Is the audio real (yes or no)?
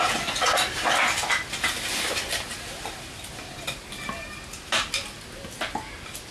yes